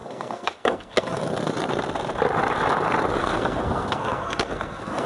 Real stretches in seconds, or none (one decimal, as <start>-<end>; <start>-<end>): 1.2-3.2